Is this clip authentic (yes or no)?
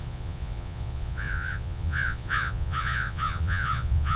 no